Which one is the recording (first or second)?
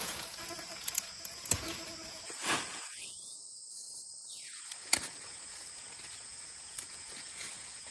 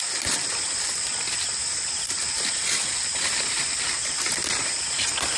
second